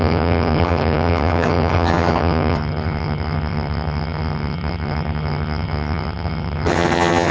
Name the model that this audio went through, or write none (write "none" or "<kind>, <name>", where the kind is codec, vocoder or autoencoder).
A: vocoder, HiFi-GAN